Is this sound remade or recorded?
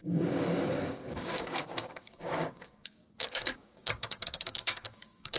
remade